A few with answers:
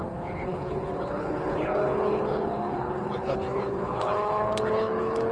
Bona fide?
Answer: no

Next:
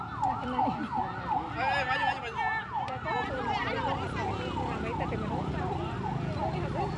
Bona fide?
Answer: yes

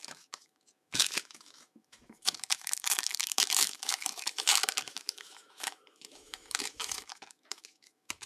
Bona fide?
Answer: no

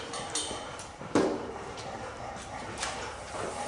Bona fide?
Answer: no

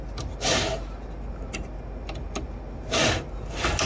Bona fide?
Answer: yes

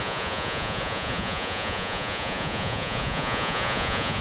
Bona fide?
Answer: no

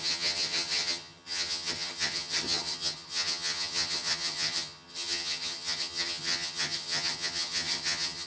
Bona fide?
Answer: no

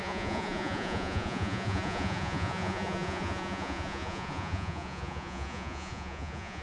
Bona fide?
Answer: no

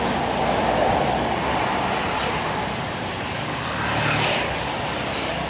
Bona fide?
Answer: yes